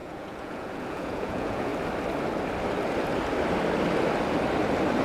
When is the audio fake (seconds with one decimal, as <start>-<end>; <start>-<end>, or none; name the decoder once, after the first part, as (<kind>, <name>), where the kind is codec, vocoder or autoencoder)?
0.0-1.7 (vocoder, Vocos)